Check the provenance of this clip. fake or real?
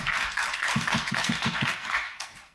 fake